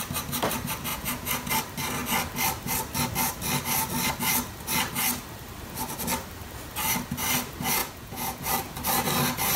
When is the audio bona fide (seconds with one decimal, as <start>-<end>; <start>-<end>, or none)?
0.0-0.9; 1.5-7.8; 8.4-9.6